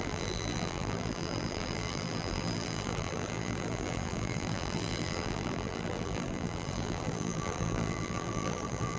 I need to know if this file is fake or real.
fake